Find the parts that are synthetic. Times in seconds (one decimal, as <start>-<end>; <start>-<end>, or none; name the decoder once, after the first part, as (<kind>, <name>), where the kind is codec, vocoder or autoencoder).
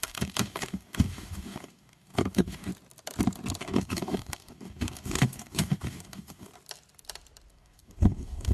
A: 0.0-2.7 (codec, DAC); 3.6-6.5; 7.5-8.5